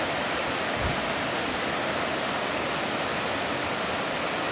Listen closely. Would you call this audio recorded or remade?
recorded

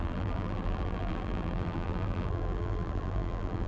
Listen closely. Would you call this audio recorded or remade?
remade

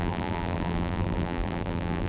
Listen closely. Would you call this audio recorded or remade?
remade